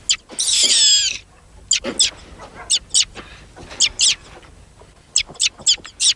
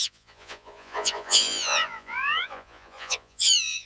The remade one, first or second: second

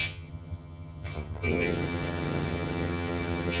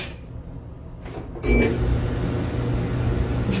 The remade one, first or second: first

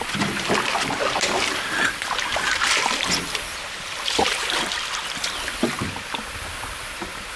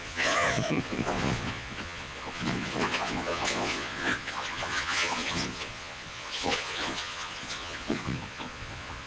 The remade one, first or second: second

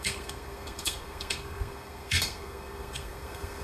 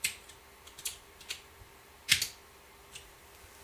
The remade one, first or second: first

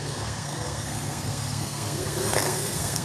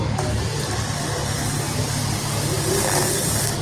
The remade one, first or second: first